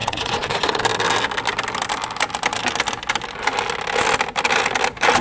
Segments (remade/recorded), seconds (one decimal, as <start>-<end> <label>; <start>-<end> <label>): 0.0-0.8 remade; 0.8-5.2 recorded